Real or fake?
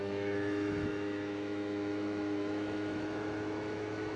fake